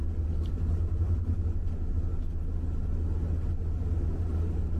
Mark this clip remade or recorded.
recorded